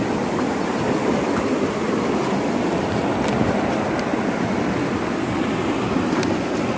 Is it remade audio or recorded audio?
recorded